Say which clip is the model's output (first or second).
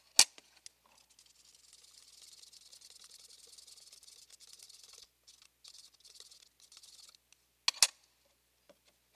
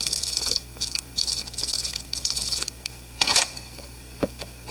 second